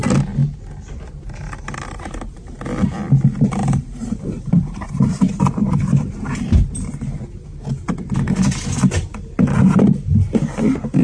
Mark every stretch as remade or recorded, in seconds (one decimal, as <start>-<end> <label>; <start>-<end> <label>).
0.0-1.4 recorded; 1.4-2.5 remade; 2.5-3.6 recorded; 3.6-4.9 remade; 4.9-11.0 recorded